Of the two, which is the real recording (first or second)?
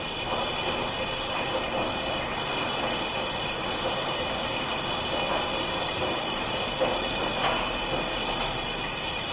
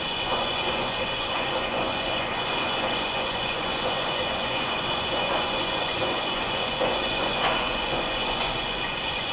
first